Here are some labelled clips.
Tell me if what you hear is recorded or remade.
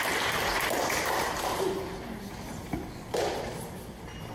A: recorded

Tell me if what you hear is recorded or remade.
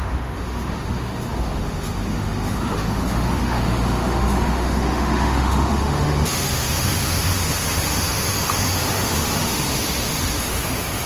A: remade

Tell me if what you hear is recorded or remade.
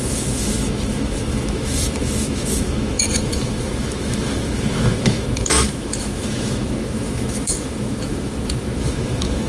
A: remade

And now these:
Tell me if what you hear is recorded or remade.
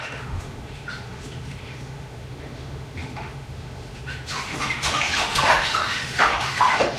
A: remade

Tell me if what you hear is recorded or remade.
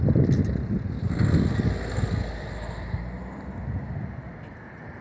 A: recorded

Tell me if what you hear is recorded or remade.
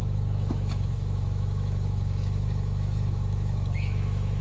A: remade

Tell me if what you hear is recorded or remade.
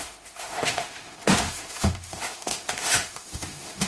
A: remade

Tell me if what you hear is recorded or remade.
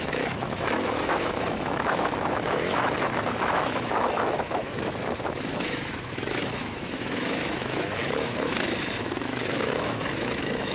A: remade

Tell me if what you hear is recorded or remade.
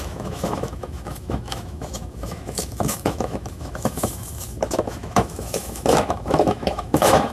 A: remade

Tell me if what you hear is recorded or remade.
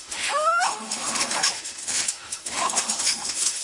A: remade